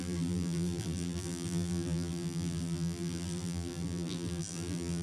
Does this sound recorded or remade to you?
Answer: remade